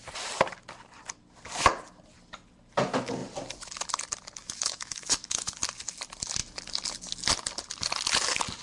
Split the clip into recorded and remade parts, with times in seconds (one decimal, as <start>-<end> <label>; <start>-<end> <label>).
0.0-4.4 recorded; 4.4-5.5 remade; 5.5-8.6 recorded